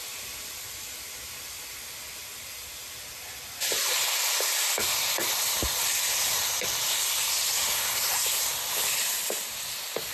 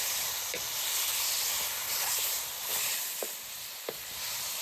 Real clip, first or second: first